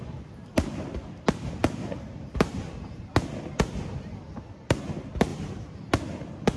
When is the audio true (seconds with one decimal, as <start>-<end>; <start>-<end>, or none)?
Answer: 0.0-1.6; 3.0-5.3; 5.9-6.6